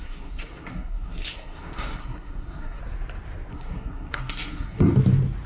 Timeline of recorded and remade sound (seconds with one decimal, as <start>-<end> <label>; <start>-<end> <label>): 0.0-2.8 remade; 2.8-3.5 recorded; 3.5-4.9 remade; 4.9-5.5 recorded